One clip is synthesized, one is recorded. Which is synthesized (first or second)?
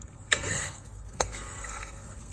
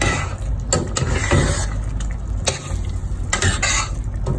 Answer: first